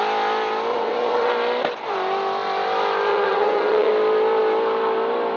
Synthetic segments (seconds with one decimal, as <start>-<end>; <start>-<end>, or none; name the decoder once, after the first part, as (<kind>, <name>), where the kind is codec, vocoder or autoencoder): 0.7-1.3 (vocoder, WaveNeXt); 3.1-3.9